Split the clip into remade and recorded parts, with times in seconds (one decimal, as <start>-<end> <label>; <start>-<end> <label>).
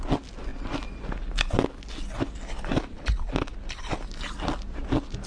0.0-2.7 recorded; 2.7-3.3 remade; 3.3-5.3 recorded